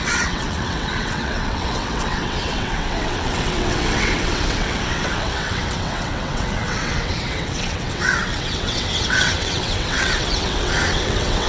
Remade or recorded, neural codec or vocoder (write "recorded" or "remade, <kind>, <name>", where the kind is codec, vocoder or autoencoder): remade, vocoder, WaveNeXt